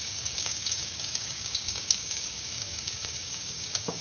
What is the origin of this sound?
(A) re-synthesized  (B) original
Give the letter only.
A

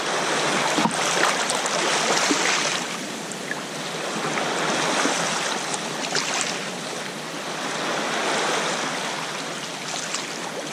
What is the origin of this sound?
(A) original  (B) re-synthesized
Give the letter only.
A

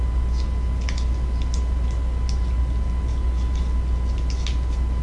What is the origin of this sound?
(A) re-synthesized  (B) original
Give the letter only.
B